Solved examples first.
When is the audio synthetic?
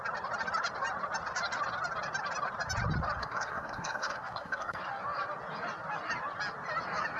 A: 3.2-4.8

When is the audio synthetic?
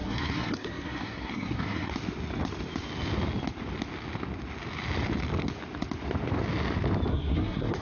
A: 0.0-1.9; 7.1-7.8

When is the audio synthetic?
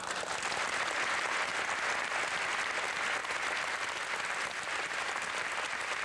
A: none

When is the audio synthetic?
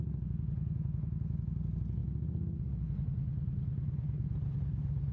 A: none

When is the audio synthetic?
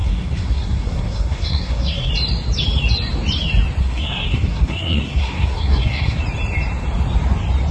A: 0.0-2.1; 3.8-6.2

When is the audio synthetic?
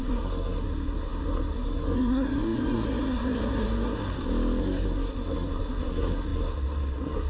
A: 0.0-4.0; 4.6-7.3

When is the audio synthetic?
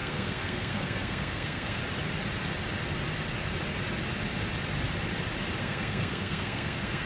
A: 0.0-1.8; 5.6-7.1